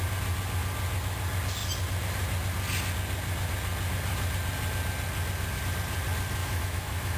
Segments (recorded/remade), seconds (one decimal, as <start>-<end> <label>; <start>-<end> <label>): 0.0-6.4 recorded; 6.4-7.2 remade